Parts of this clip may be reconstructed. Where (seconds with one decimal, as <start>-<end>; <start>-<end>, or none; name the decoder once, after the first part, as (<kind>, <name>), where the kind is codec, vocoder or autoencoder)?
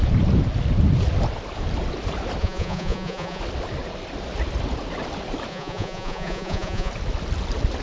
2.4-3.4 (vocoder, Vocos); 5.5-6.9